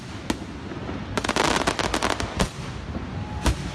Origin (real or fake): real